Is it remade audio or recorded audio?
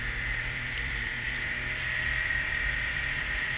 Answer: remade